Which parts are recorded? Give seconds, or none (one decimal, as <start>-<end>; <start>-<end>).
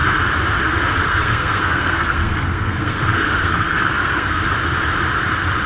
0.0-1.0; 4.4-5.7